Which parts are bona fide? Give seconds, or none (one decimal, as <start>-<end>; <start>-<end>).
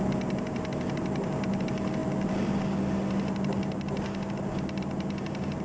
0.0-5.6